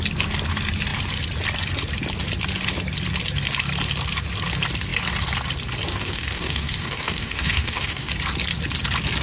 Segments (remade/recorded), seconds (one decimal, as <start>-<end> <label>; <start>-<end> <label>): 0.0-5.9 recorded; 5.9-8.1 remade; 8.1-9.2 recorded